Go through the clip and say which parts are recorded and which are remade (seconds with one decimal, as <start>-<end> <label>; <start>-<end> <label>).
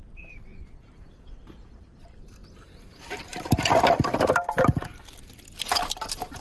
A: 0.0-6.4 remade